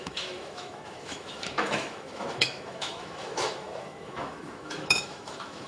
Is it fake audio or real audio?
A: fake